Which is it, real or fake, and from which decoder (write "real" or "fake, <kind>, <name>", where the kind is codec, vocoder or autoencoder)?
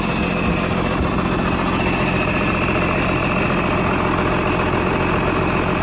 real